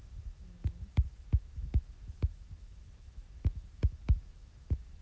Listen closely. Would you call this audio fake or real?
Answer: fake